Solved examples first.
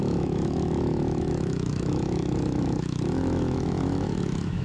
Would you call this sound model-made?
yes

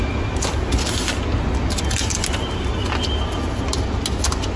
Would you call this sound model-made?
no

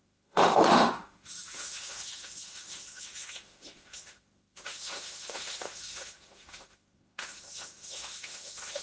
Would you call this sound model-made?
yes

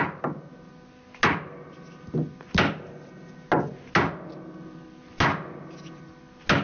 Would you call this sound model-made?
no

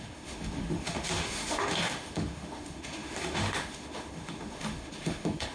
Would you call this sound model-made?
yes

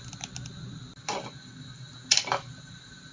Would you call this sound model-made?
no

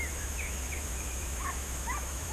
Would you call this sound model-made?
yes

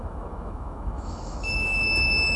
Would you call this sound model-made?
yes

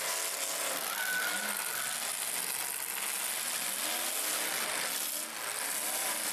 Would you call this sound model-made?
no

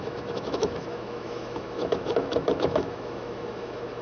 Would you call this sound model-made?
yes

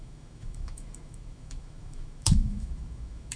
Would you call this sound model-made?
yes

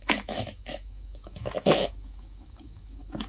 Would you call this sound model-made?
yes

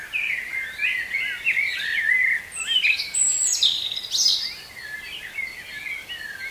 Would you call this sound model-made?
no